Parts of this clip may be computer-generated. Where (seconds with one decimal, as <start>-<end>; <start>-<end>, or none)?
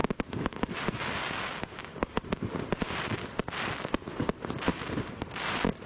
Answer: 0.0-0.6; 1.9-2.5